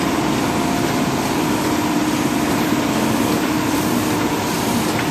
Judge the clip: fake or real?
real